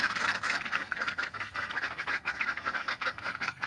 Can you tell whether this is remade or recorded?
remade